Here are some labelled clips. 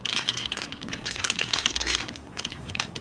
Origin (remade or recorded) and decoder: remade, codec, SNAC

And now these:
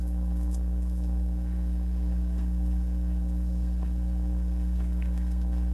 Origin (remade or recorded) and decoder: remade, codec, SNAC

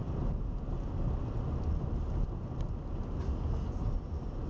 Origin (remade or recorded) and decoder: recorded